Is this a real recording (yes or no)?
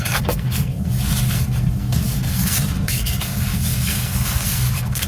no